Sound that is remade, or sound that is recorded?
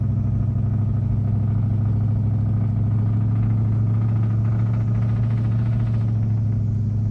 recorded